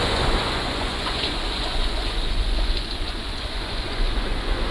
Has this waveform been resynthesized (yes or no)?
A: yes